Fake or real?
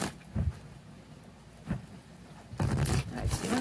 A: real